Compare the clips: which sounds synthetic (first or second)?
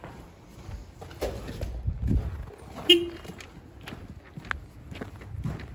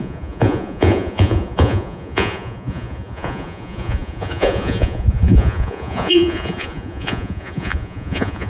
second